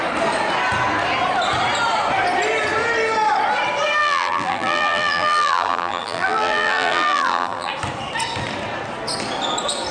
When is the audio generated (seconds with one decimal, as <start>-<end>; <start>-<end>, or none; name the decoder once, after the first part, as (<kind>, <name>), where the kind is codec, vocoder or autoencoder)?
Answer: 4.0-7.7 (vocoder, BigVGAN v2)